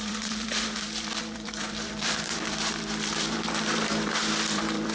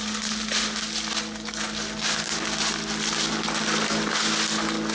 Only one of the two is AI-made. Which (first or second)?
first